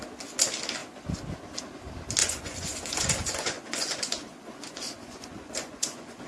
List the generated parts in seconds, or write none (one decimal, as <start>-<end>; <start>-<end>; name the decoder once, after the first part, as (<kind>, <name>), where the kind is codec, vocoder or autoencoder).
2.2-6.3 (vocoder, Vocos)